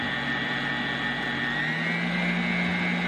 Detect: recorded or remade recorded